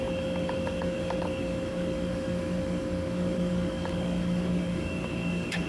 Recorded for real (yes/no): no